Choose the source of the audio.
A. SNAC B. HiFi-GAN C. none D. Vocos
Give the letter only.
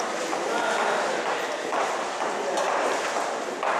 C